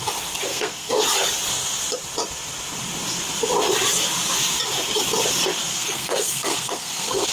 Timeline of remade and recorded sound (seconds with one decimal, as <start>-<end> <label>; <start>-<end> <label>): 0.0-0.5 recorded; 0.5-1.0 remade; 1.0-5.7 recorded; 5.7-7.3 remade